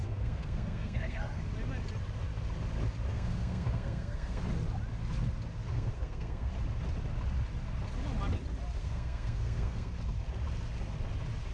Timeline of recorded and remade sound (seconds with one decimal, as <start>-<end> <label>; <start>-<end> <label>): 0.0-1.4 remade; 1.4-3.1 recorded; 3.1-4.4 remade; 4.4-5.7 recorded; 5.7-6.5 remade; 6.5-8.8 recorded; 8.8-9.9 remade; 9.9-11.5 recorded